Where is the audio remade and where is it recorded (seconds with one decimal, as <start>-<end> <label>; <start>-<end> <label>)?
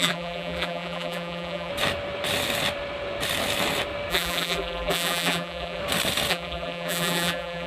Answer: 0.0-1.7 remade; 1.7-4.1 recorded; 4.1-5.8 remade; 5.8-6.3 recorded; 6.3-7.7 remade